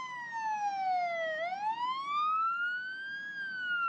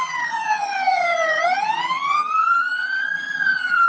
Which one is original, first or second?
first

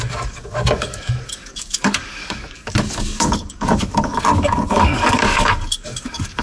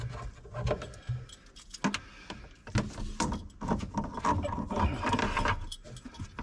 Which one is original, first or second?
second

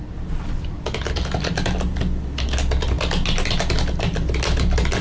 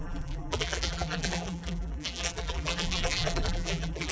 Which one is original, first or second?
first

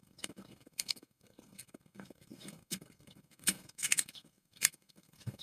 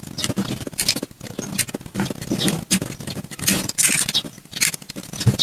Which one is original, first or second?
second